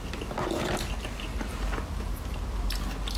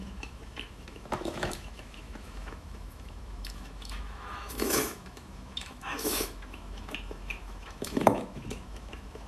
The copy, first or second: second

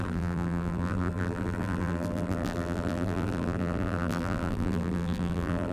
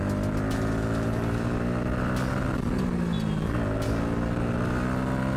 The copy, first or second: first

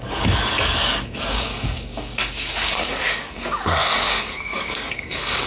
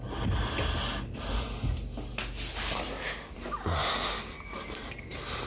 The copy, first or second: first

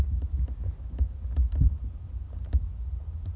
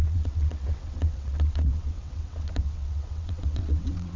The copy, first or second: second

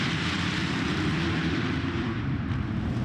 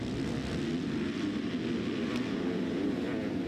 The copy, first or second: first